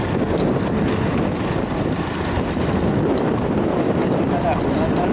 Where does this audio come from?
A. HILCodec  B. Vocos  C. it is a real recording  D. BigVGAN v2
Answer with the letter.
C